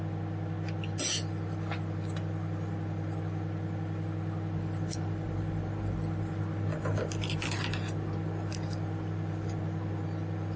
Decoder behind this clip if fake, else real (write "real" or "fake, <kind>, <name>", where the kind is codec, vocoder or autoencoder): real